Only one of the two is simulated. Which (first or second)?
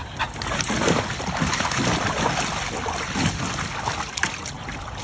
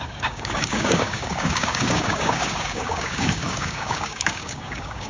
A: second